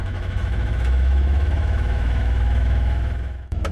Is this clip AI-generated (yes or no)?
yes